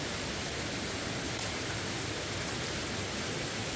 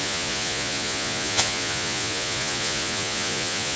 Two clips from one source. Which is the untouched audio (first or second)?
first